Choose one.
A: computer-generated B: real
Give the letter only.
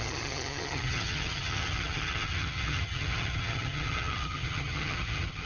A